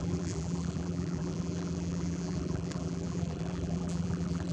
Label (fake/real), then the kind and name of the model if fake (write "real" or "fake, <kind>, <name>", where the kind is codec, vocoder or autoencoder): fake, vocoder, BigVGAN v2